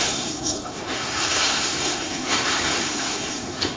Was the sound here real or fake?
fake